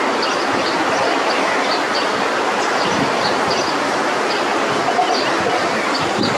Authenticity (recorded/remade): recorded